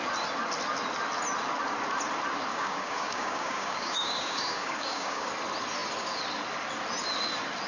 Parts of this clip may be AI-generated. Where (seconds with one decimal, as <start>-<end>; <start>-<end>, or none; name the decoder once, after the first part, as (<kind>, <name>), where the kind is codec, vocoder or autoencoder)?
2.5-5.3 (codec, DAC)